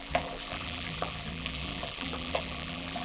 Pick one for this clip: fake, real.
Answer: fake